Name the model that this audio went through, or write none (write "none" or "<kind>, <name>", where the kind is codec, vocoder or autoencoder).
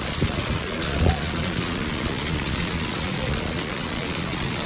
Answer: vocoder, Vocos